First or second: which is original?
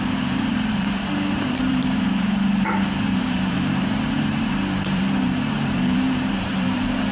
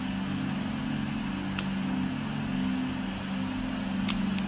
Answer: second